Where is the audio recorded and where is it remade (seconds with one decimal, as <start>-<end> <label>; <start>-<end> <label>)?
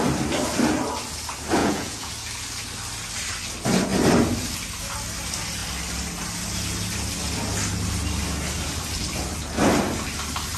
0.0-1.6 recorded; 1.6-2.1 remade; 2.1-10.6 recorded